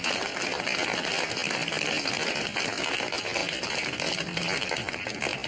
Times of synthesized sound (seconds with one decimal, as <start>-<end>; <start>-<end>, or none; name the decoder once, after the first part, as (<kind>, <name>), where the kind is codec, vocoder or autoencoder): none